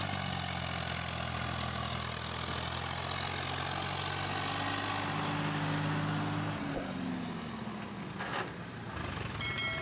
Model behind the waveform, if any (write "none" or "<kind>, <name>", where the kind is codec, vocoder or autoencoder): none